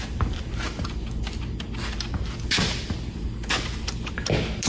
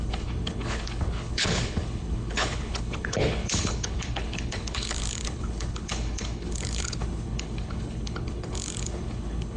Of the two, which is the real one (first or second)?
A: first